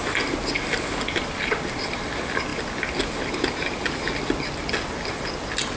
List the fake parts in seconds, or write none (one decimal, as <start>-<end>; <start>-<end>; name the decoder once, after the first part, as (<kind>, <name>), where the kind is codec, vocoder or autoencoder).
none